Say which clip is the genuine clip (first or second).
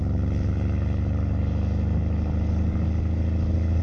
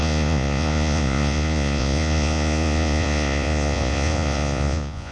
first